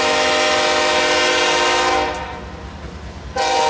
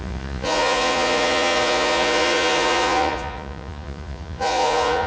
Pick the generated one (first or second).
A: second